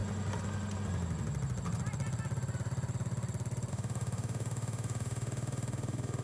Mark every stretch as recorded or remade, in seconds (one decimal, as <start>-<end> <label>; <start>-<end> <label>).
0.0-3.7 recorded; 3.7-6.2 remade

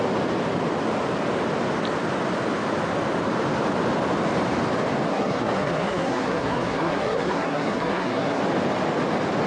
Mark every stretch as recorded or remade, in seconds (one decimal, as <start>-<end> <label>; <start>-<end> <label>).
0.0-5.1 recorded; 5.1-8.4 remade; 8.4-9.5 recorded